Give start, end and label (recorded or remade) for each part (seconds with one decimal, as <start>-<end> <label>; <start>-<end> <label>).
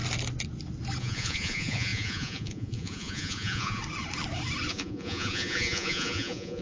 0.0-1.0 recorded; 1.0-3.8 remade; 3.8-4.7 recorded; 4.7-6.6 remade